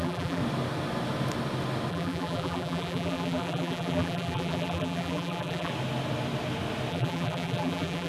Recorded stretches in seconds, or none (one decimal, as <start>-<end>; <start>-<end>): 0.4-1.9; 5.7-6.9